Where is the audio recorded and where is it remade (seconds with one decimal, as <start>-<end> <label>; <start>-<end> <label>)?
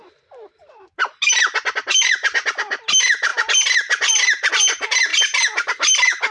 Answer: 0.0-6.3 recorded